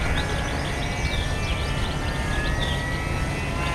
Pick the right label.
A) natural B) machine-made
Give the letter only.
A